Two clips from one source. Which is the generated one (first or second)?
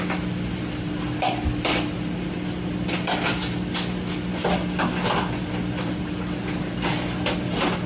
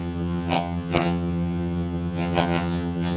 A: second